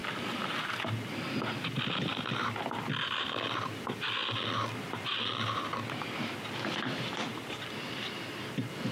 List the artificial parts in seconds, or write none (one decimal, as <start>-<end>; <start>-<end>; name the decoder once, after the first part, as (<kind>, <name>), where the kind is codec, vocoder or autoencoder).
none

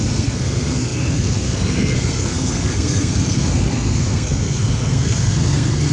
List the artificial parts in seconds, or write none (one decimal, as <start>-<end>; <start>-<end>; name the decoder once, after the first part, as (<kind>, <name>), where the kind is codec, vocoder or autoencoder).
0.0-5.9 (codec, SNAC)

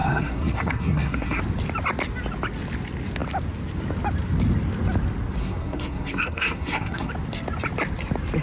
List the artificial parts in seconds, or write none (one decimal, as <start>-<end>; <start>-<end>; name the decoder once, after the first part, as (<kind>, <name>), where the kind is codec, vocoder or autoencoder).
0.0-1.4 (codec, SNAC); 5.4-7.1